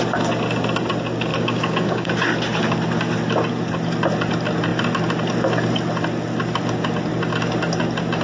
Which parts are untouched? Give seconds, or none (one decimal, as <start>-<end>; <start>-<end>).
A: 0.0-1.3; 2.1-8.2

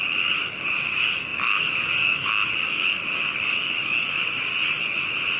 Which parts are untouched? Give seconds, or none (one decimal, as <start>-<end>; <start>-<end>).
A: 3.2-3.7; 4.5-5.4

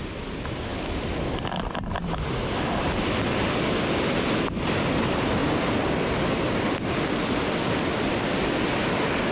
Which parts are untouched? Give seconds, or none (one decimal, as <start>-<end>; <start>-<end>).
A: 0.0-9.3

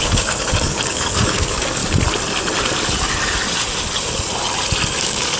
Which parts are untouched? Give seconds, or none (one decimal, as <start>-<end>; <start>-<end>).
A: 1.8-5.0

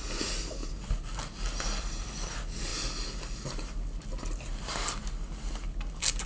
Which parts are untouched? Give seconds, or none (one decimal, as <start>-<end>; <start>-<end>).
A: 0.0-6.3